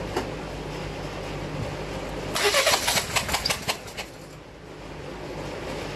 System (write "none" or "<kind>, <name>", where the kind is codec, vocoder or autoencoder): none